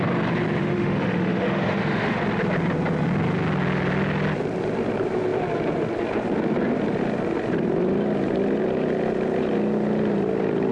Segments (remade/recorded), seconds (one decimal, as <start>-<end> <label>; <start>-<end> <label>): 0.0-0.6 recorded; 0.6-2.2 remade; 2.2-10.7 recorded